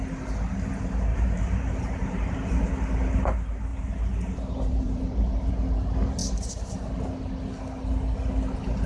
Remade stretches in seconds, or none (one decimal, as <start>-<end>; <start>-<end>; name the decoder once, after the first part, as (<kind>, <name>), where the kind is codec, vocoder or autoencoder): 1.1-2.7 (vocoder, BigVGAN v2); 3.7-5.5